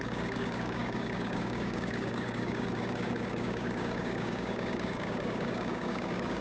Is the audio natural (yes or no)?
no